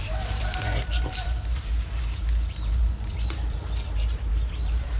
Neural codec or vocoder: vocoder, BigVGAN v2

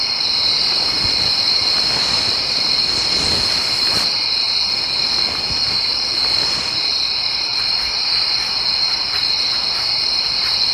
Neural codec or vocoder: none